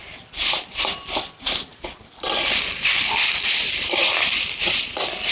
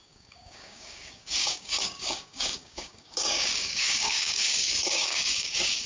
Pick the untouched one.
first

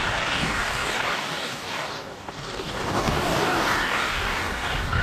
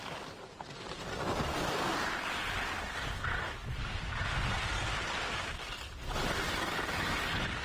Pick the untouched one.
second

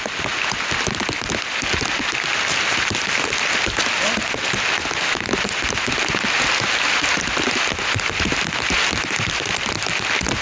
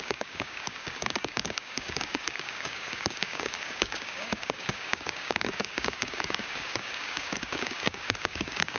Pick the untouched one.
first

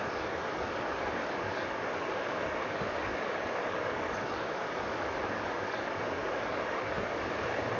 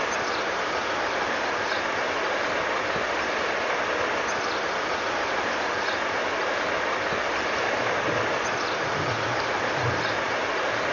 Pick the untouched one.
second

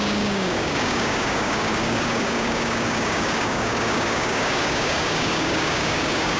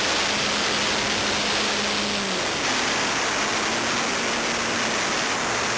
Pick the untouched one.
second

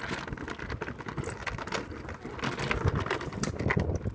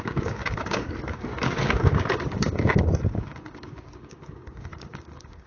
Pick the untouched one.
first